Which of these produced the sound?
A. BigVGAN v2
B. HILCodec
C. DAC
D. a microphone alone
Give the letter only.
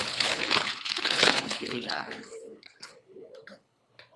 B